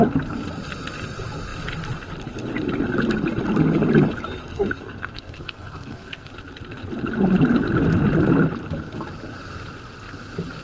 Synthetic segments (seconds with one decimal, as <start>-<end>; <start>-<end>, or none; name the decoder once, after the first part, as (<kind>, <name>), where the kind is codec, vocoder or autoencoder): 4.4-6.3 (codec, SNAC)